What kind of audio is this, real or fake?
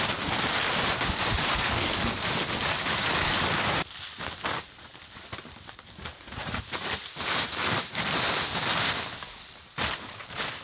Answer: real